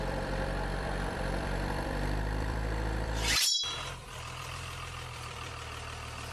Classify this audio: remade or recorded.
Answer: remade